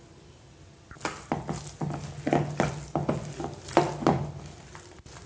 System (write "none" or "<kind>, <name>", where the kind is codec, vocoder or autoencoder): none